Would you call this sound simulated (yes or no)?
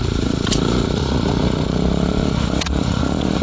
yes